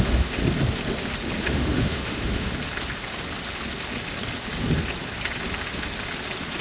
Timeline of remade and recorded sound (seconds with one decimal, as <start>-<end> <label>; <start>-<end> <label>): 0.0-0.4 remade; 0.4-1.4 recorded; 1.4-2.5 remade; 2.5-6.6 recorded